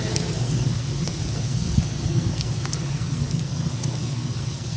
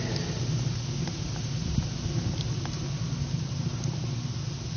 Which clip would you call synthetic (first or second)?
first